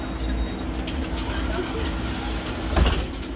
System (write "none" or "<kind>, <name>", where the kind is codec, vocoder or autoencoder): none